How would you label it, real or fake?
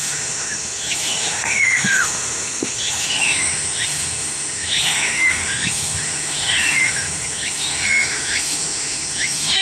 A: fake